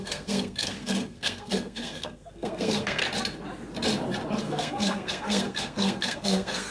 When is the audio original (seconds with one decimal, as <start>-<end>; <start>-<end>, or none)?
3.0-4.4